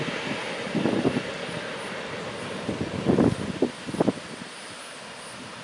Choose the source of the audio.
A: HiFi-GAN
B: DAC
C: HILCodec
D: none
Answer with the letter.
D